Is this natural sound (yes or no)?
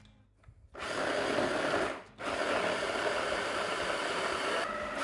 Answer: yes